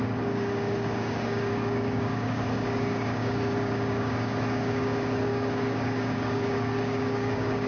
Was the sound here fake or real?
fake